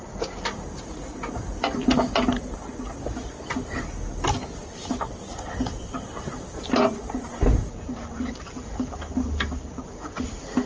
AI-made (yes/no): no